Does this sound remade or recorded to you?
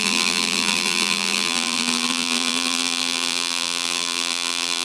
remade